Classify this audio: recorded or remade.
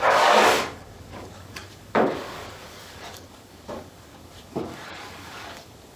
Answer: remade